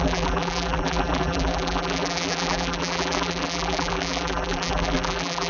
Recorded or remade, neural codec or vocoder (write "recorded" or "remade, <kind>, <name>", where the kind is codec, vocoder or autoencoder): remade, vocoder, BigVGAN v2